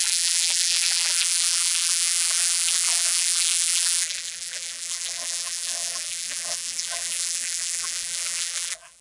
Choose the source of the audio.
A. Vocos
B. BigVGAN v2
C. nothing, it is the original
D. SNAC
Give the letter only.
B